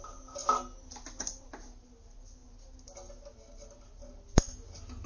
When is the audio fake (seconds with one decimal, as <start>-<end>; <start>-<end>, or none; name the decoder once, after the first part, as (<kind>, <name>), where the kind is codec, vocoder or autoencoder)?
none